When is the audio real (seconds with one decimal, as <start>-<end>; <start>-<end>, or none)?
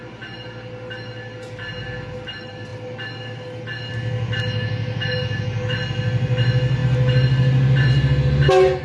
0.0-8.8